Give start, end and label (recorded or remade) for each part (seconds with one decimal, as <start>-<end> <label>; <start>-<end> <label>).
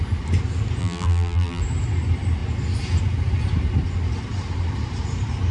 0.0-0.8 recorded; 0.8-1.6 remade; 1.6-5.5 recorded